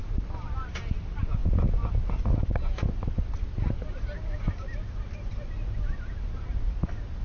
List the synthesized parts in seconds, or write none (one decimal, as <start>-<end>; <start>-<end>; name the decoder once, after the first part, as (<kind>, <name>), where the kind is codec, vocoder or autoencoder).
none